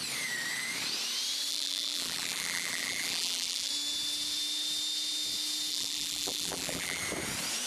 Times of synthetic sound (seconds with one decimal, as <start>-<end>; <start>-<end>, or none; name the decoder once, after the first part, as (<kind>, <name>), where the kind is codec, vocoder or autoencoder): 1.5-3.7 (vocoder, BigVGAN v2); 5.7-7.0